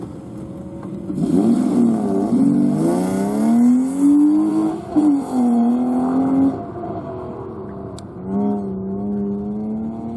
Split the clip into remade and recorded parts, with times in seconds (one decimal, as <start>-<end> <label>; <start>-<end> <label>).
0.0-4.5 recorded; 4.5-5.7 remade; 5.7-10.2 recorded